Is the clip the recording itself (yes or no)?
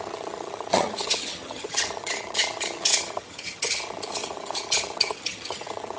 no